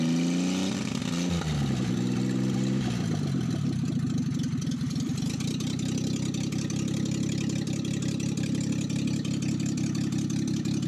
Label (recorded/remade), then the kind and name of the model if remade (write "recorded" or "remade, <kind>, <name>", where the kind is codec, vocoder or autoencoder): recorded